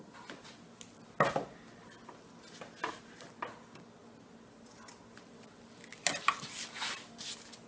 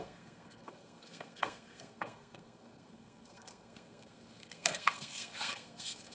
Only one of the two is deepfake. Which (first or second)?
second